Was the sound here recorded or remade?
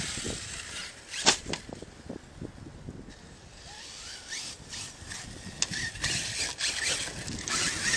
recorded